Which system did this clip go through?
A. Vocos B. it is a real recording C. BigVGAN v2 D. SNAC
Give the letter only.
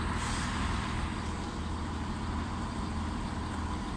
B